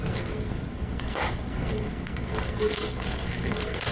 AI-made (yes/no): yes